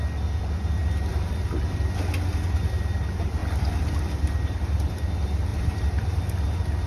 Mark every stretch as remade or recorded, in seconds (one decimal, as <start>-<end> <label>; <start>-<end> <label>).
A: 0.0-3.4 recorded; 3.4-4.0 remade; 4.0-5.5 recorded; 5.5-6.2 remade; 6.2-6.9 recorded